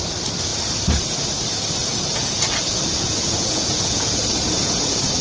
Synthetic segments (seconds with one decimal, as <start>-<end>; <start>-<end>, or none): 1.8-5.2